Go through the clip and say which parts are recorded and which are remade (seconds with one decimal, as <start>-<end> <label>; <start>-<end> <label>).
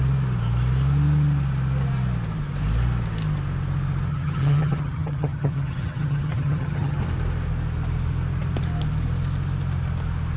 0.0-4.1 recorded; 4.1-7.0 remade; 7.0-10.4 recorded